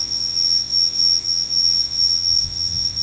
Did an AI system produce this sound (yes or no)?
yes